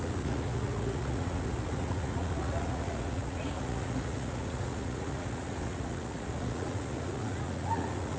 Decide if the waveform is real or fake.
fake